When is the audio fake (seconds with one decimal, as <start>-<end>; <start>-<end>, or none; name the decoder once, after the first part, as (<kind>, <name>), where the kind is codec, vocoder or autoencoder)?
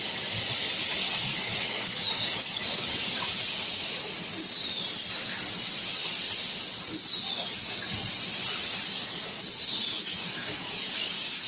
1.0-2.9 (codec, DAC); 8.9-9.4; 9.9-11.5